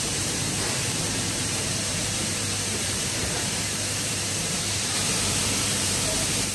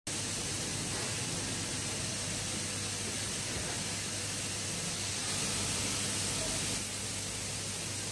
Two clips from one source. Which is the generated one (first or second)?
first